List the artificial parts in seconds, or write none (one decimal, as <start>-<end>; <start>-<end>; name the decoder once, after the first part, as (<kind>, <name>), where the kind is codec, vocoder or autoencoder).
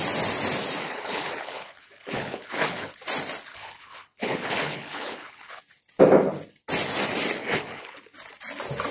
0.8-2.9 (codec, HILCodec); 3.5-5.6; 7.4-8.0